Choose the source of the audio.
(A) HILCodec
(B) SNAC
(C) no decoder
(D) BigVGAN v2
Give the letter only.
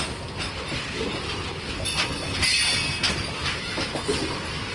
C